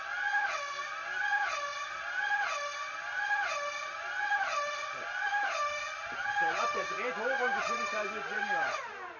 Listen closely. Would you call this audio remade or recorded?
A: recorded